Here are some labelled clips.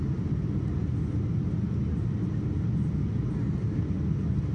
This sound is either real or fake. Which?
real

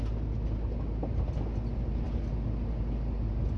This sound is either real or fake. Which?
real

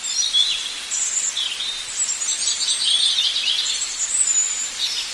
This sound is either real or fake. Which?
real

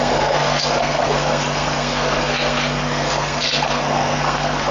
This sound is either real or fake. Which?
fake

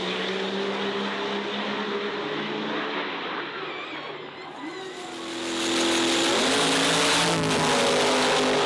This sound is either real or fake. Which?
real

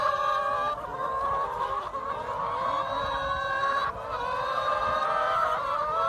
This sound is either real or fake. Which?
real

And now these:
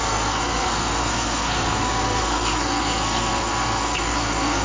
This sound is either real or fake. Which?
fake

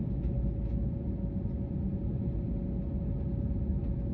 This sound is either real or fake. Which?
real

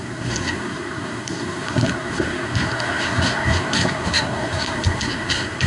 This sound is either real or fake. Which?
fake